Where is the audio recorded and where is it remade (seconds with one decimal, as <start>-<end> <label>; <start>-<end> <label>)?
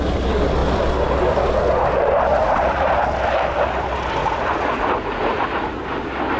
0.0-2.3 recorded; 2.3-2.9 remade; 2.9-4.2 recorded; 4.2-5.8 remade; 5.8-6.4 recorded